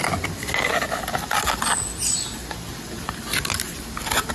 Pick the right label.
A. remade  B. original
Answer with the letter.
B